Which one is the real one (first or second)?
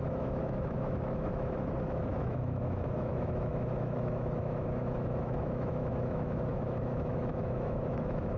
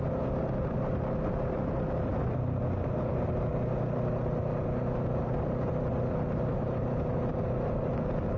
second